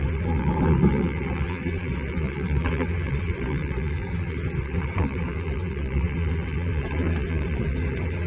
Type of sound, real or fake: fake